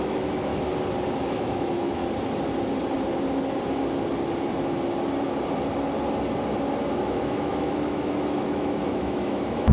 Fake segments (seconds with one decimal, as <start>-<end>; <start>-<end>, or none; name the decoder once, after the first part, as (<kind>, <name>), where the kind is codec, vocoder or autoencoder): 0.0-0.5 (autoencoder, DAC-VAE); 1.2-2.0; 6.9-9.7